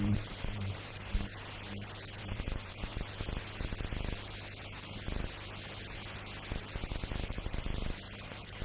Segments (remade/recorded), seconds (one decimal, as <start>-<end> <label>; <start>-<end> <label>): 0.0-1.1 remade; 1.1-2.2 recorded; 2.2-2.9 remade; 2.9-7.3 recorded; 7.3-8.6 remade